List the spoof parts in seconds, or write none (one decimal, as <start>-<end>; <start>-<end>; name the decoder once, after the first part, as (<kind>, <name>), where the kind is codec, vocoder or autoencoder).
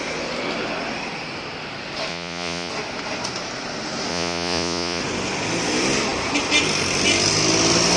2.1-2.7 (vocoder, Vocos); 4.1-5.0